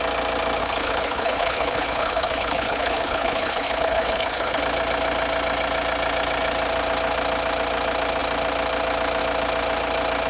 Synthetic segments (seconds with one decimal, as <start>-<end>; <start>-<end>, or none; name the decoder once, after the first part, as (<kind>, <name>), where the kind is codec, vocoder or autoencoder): 0.6-4.6 (codec, HILCodec)